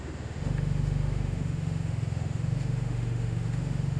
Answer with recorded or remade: remade